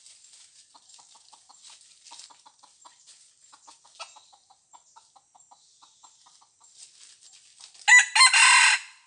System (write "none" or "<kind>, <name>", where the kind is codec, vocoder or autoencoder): none